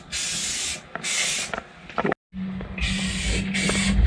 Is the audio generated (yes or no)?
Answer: no